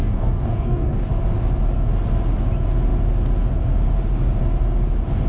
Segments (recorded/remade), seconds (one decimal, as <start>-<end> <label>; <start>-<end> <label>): 0.0-1.1 remade; 1.1-5.3 recorded